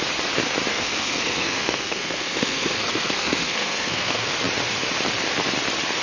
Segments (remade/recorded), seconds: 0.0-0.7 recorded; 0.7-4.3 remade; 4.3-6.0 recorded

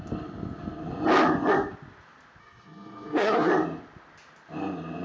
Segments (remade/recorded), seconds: 0.0-2.4 recorded; 2.4-3.5 remade; 3.5-5.0 recorded

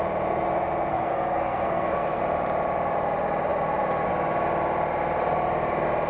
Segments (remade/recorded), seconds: 0.0-0.9 recorded; 0.9-2.2 remade; 2.2-6.1 recorded

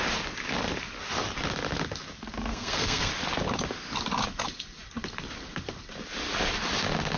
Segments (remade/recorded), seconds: 0.0-2.5 recorded; 2.5-3.1 remade; 3.1-7.2 recorded

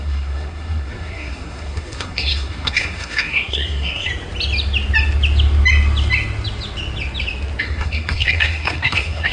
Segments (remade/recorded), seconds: 0.0-4.1 remade; 4.1-7.6 recorded; 7.6-9.3 remade

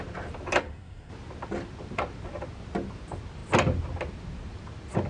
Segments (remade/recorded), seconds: 0.0-0.6 recorded; 0.6-1.1 remade; 1.1-5.1 recorded

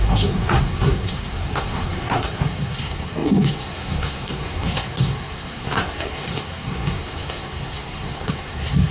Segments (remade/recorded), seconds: 0.0-8.9 remade

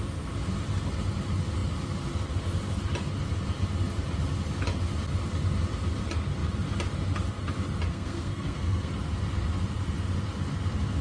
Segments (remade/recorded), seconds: 0.0-7.9 recorded; 7.9-8.9 remade; 8.9-11.0 recorded